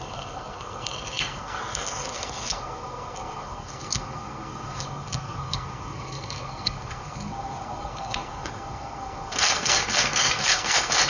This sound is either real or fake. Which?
fake